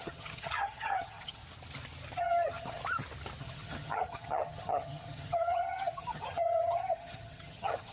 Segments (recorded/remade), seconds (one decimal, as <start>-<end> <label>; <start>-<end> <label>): 0.0-1.4 remade; 1.4-2.2 recorded; 2.2-2.8 remade; 2.8-3.4 recorded; 3.4-7.9 remade